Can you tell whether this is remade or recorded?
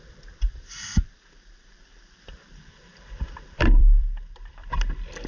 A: remade